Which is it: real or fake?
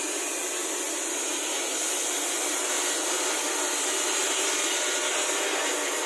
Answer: real